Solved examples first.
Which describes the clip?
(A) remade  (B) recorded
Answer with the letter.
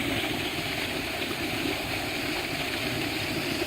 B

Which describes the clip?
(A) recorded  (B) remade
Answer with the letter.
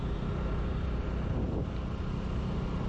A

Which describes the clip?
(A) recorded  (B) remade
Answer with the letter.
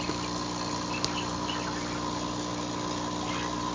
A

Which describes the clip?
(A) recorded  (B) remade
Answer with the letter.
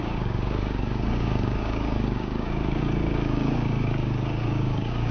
B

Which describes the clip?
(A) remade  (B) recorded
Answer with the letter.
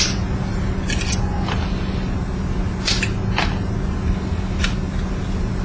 B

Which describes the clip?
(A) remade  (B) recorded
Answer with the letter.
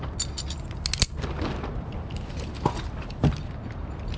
B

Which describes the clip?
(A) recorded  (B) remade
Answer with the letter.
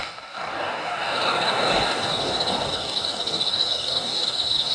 B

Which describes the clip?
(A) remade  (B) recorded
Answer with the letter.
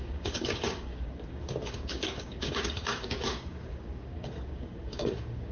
A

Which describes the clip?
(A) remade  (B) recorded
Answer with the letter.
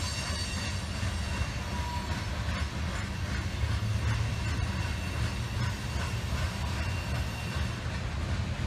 B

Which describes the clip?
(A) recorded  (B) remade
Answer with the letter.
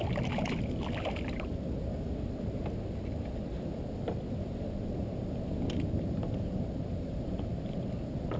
A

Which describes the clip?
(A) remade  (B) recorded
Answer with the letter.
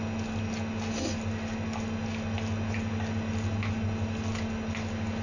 B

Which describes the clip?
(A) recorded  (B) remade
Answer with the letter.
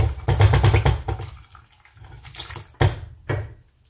A